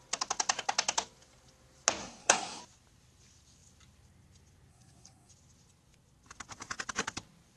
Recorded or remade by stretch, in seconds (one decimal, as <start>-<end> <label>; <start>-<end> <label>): 0.0-2.0 recorded; 2.0-2.6 remade; 2.6-4.7 recorded; 4.7-5.3 remade; 5.3-7.6 recorded